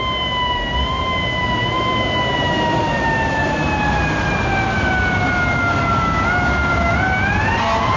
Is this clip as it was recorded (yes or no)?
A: yes